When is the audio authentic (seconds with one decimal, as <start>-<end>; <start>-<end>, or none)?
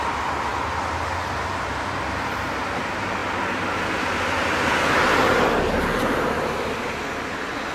0.0-7.7